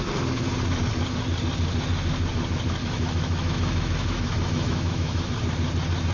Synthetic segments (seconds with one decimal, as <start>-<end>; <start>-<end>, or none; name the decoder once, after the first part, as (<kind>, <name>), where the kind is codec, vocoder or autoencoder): 2.8-5.3 (autoencoder, DAC-VAE)

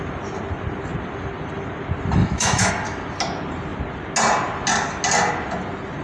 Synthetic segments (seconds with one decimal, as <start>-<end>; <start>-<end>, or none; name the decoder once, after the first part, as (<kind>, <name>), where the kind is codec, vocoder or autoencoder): 2.2-2.7 (autoencoder, DAC-VAE)

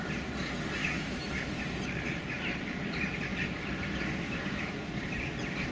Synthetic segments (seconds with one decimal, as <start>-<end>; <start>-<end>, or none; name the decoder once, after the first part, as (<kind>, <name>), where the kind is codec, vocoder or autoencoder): 0.8-1.5 (autoencoder, DAC-VAE)

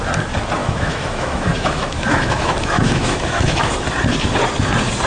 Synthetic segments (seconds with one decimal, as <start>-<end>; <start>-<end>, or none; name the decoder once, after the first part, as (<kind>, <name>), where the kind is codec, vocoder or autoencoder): 0.6-3.7 (autoencoder, DAC-VAE)

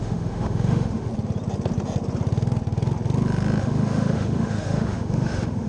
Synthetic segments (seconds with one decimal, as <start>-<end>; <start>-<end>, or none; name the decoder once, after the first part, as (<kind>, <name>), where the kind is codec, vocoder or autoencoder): 0.0-1.1 (autoencoder, DAC-VAE); 3.6-5.7